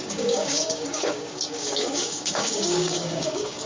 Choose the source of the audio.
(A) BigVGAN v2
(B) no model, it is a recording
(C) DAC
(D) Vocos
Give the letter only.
C